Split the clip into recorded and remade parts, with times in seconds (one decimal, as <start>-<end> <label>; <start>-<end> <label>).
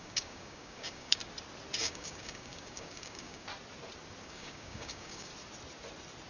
0.0-1.2 remade; 1.2-1.8 recorded; 1.8-3.5 remade; 3.5-4.2 recorded; 4.2-5.3 remade; 5.3-6.3 recorded